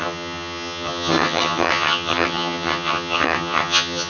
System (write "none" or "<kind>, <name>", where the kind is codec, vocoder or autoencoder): vocoder, HiFi-GAN